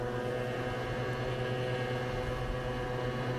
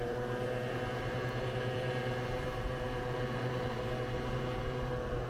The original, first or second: first